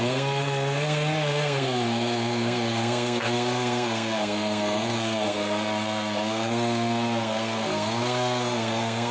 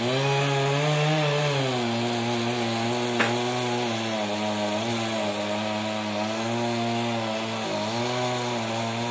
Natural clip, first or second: second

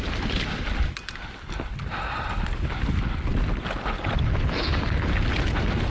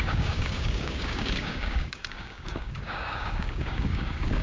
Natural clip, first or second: first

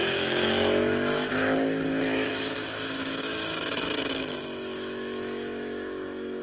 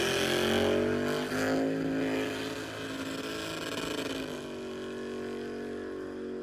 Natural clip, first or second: second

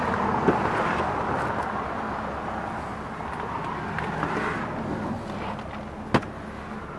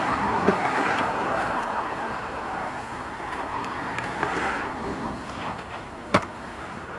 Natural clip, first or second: first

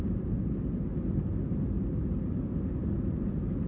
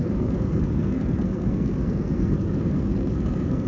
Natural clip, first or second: first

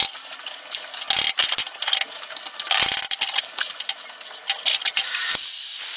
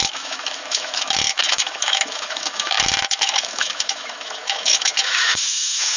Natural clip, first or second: first